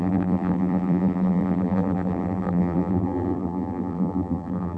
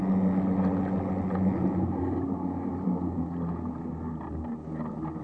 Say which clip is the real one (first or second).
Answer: second